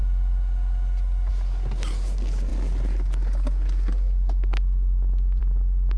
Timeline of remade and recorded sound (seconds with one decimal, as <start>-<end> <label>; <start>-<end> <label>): 0.0-6.0 recorded